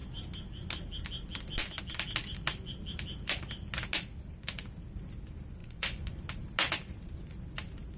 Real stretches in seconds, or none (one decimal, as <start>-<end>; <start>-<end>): 0.0-5.6; 6.2-8.0